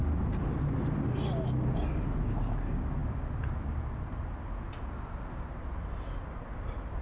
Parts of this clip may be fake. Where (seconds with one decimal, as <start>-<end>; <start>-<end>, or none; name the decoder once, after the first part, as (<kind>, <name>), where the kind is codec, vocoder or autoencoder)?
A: 0.0-1.0 (vocoder, BigVGAN v2)